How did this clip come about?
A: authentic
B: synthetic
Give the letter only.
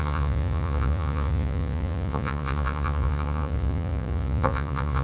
B